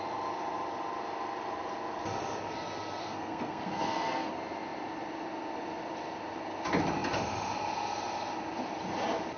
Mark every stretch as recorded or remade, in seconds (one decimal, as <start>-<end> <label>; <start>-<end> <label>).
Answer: 0.0-3.0 recorded; 3.0-4.3 remade; 4.3-9.4 recorded